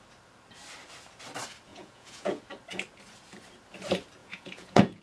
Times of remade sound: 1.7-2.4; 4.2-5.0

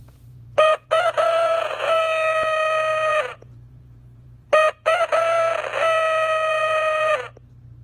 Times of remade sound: 0.0-2.0; 3.1-5.2; 6.5-7.1

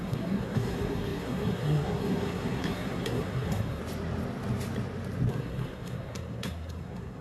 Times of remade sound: 0.0-3.8; 5.3-7.2

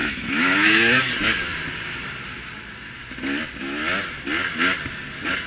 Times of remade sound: 0.0-1.1

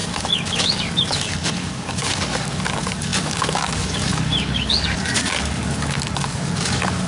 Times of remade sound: 0.0-7.1

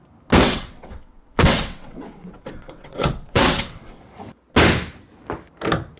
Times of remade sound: 0.4-4.0

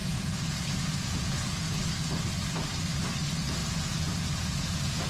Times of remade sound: 0.0-1.8; 3.6-5.1

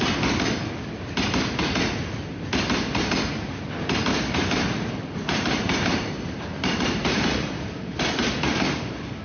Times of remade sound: 4.1-9.2